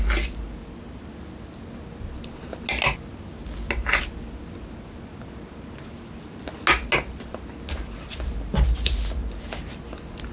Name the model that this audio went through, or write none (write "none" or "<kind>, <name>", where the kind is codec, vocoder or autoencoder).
none